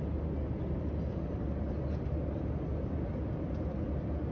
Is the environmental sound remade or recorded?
recorded